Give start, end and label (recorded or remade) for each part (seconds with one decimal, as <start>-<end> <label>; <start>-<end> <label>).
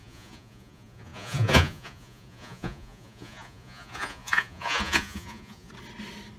0.0-5.7 remade; 5.7-6.4 recorded